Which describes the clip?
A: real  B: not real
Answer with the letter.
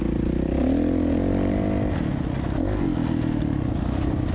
A